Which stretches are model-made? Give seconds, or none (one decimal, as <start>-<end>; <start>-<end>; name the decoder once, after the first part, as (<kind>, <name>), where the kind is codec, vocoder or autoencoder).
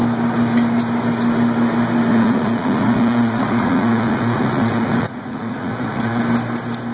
2.1-6.2 (vocoder, Vocos)